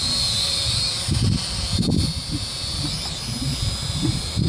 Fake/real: real